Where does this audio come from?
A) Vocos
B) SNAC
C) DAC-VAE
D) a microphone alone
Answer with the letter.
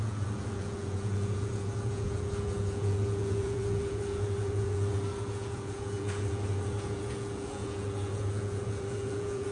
A